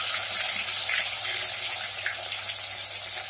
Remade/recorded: recorded